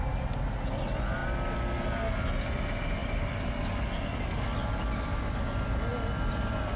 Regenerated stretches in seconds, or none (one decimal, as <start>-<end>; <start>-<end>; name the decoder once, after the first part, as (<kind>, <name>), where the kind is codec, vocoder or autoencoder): none